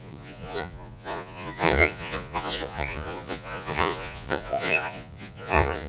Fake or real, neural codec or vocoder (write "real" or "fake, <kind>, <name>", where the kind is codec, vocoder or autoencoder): fake, vocoder, Vocos